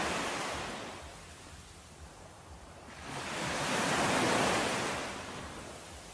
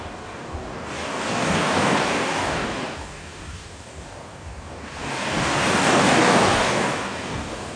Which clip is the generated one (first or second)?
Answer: second